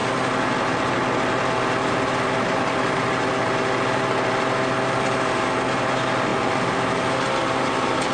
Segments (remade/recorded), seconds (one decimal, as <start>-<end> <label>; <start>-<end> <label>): 0.0-8.1 recorded